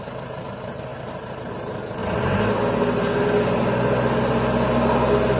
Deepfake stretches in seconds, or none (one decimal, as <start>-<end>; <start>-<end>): none